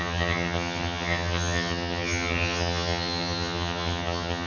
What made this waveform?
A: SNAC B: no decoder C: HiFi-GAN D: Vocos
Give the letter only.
C